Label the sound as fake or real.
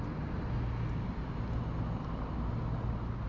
real